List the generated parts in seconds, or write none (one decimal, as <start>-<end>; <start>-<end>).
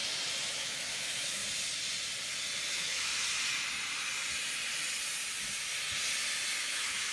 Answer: 0.5-1.4; 2.7-3.1; 6.6-7.1